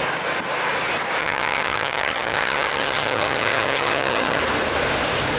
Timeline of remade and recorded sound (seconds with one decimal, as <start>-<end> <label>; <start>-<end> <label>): 0.0-1.2 recorded; 1.2-4.4 remade; 4.4-5.4 recorded